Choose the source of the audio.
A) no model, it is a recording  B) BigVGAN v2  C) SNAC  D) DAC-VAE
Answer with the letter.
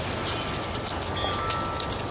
A